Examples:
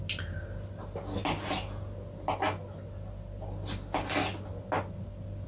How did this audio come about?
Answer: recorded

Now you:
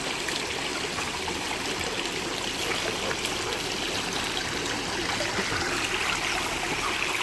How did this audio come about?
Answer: recorded